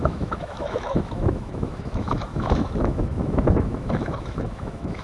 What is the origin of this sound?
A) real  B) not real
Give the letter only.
B